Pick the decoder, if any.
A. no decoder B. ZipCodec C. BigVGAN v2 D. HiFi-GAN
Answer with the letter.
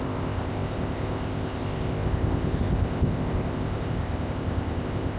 B